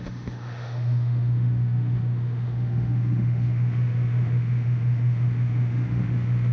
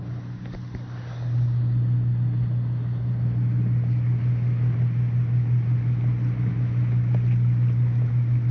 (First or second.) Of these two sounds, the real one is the second